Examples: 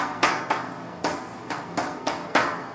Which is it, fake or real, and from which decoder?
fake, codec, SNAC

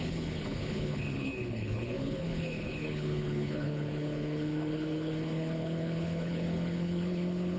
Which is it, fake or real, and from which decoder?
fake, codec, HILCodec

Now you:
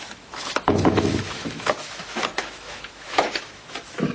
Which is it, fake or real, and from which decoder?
fake, autoencoder, DAC-VAE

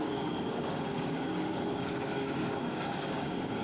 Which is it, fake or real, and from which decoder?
fake, codec, DAC